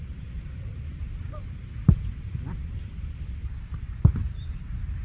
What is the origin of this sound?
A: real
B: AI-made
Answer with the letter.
B